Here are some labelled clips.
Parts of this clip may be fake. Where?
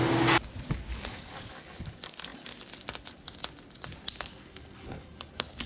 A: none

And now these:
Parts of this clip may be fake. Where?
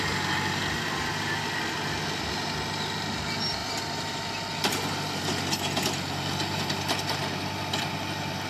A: none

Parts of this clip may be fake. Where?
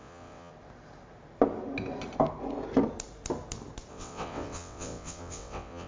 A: 0.0-0.5; 3.9-5.9